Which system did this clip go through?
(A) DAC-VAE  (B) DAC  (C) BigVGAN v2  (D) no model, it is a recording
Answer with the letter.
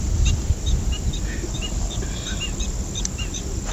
C